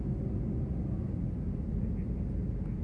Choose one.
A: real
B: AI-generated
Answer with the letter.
A